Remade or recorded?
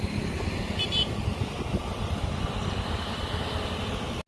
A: recorded